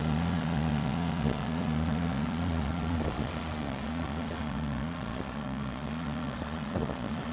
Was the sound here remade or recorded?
remade